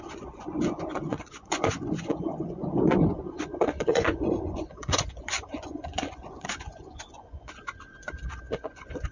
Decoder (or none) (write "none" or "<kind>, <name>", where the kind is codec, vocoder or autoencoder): vocoder, Vocos